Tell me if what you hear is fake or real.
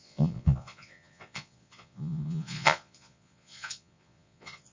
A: fake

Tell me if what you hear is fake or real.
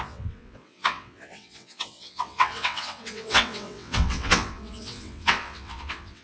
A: fake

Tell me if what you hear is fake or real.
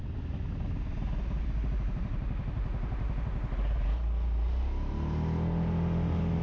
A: real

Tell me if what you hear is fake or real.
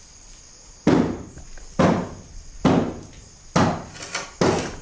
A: real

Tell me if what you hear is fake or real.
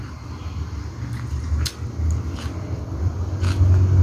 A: real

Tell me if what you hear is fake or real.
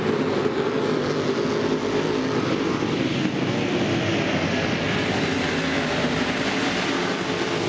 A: real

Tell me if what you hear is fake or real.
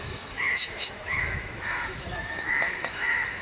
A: fake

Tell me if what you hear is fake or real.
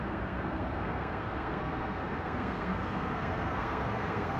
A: fake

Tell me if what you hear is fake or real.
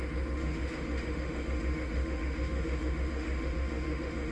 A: fake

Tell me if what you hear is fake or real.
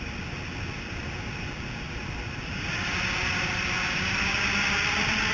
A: real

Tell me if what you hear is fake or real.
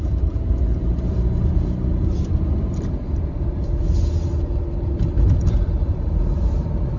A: fake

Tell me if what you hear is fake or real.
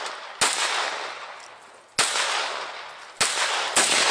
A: real